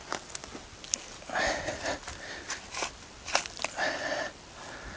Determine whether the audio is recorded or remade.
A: recorded